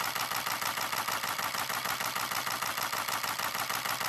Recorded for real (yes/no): yes